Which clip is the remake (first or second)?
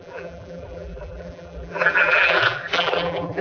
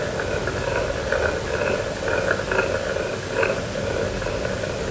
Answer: first